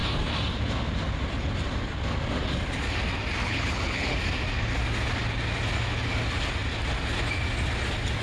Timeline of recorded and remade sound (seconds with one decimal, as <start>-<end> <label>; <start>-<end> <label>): 0.0-3.4 recorded; 3.4-4.2 remade; 4.2-8.2 recorded